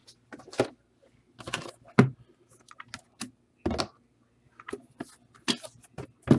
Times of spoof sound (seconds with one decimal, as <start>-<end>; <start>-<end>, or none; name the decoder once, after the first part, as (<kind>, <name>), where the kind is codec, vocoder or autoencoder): none